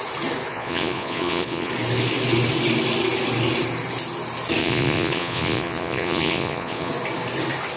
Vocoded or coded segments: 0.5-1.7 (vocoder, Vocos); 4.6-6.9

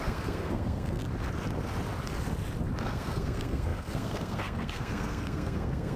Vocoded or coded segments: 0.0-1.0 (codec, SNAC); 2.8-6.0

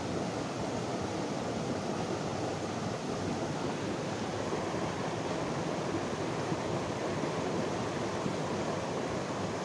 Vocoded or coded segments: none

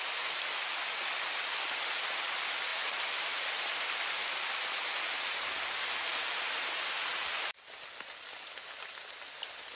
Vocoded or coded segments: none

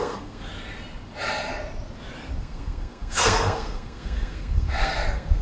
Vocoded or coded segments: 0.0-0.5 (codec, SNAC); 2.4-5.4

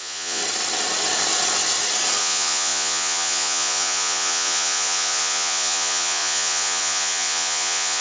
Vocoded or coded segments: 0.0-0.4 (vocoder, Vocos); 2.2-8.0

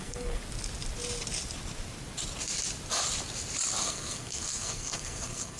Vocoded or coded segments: 0.0-0.4 (codec, SNAC); 3.8-5.6